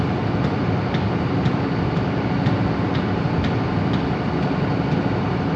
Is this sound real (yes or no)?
yes